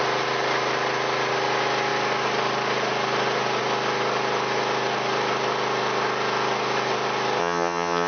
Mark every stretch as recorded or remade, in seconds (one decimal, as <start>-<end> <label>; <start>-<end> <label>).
0.0-7.4 recorded; 7.4-8.1 remade